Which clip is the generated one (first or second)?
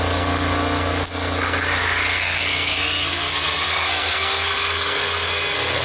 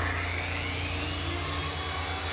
first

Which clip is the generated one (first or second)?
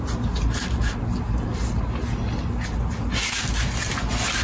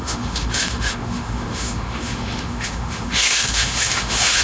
second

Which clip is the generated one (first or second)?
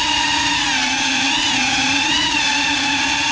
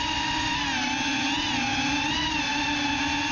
first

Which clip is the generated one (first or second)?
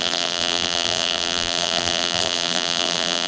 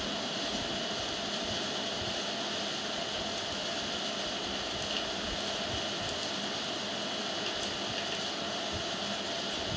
first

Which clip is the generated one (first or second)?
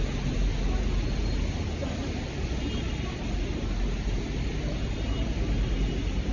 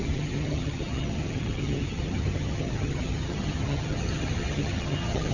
second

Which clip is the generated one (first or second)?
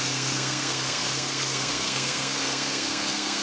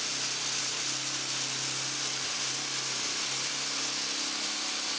first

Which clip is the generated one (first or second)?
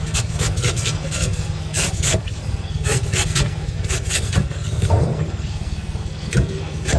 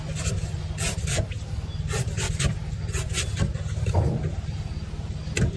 first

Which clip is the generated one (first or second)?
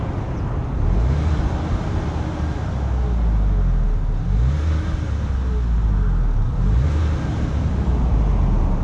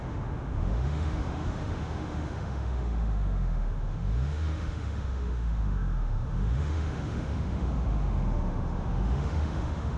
second